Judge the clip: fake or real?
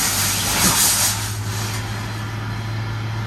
real